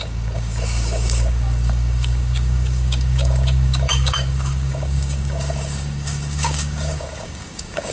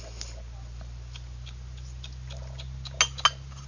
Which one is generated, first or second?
first